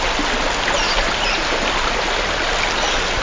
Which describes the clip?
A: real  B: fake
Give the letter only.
A